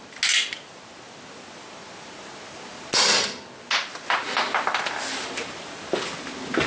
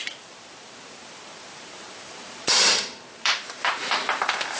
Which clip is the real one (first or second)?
first